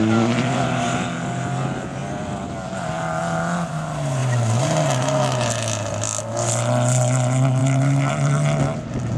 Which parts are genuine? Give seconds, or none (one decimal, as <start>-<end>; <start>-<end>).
0.0-7.6; 8.1-9.2